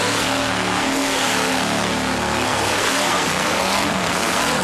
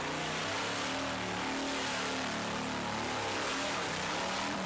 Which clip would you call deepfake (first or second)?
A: first